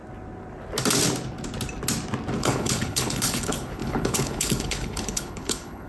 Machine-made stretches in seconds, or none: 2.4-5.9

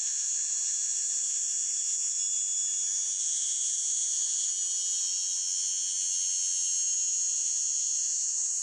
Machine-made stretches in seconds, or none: 0.0-2.2; 3.2-4.5; 7.3-8.6

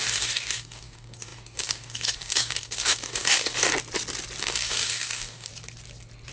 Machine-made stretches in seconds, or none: 0.0-3.7; 4.4-5.5

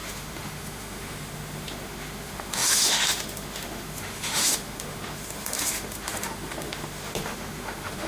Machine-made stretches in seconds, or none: 0.0-8.1

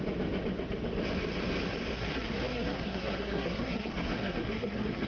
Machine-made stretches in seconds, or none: 1.9-5.1